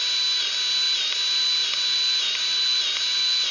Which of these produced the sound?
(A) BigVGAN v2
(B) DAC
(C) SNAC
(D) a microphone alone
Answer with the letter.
D